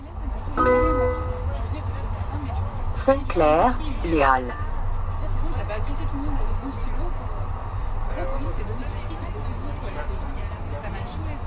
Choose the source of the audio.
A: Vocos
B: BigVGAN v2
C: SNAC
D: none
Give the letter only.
D